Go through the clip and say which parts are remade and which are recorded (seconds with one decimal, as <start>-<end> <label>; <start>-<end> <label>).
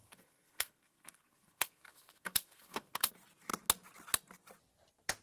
0.0-3.1 remade; 3.1-5.2 recorded